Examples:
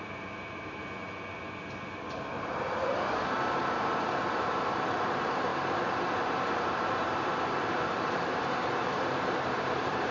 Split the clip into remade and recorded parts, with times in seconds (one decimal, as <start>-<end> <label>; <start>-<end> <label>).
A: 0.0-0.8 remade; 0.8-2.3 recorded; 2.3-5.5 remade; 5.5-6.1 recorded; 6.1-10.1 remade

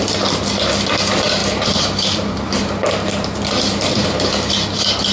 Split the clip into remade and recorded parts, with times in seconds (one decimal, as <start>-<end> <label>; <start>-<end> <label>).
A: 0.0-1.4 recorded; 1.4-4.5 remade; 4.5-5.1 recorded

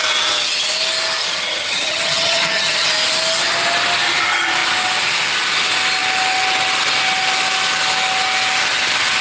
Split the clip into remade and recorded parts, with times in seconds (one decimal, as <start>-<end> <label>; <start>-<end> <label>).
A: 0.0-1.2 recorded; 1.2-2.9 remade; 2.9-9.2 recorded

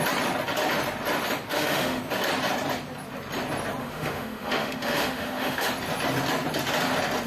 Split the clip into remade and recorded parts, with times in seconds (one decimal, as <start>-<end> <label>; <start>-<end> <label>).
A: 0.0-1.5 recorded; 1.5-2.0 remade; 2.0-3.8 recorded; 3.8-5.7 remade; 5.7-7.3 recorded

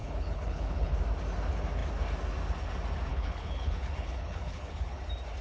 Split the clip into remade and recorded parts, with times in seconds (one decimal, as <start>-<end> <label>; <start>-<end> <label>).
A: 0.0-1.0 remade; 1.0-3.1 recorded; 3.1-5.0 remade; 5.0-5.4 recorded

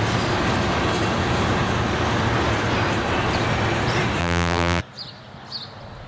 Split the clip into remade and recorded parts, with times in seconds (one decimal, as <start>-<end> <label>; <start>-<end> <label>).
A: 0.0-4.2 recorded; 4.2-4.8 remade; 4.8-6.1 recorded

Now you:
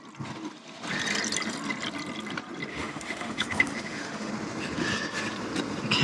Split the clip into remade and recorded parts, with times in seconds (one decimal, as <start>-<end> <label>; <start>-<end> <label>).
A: 0.0-2.7 recorded; 2.7-4.3 remade; 4.3-6.0 recorded